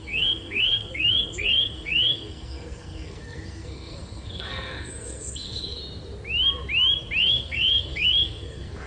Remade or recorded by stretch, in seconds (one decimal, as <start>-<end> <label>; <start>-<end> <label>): 0.0-5.8 remade; 5.8-7.2 recorded; 7.2-8.9 remade